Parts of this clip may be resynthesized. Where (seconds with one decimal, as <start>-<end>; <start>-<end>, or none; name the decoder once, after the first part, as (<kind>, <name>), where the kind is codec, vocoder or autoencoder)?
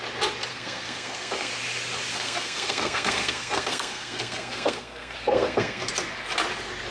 0.5-1.5 (codec, SNAC); 2.1-5.9